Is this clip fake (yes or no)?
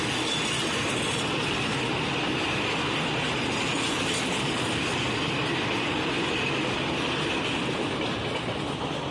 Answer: no